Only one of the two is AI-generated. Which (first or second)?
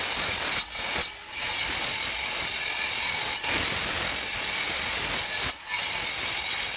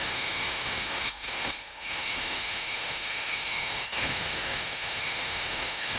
second